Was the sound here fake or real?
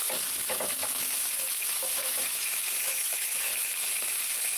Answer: fake